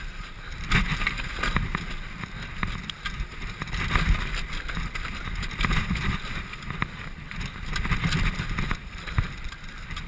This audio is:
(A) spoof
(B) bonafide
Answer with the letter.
B